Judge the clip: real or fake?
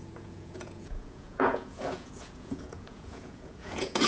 fake